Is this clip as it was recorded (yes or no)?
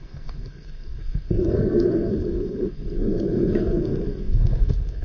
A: no